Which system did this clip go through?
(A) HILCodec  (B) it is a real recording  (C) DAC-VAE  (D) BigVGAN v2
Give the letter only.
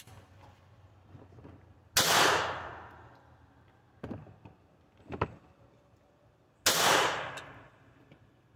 B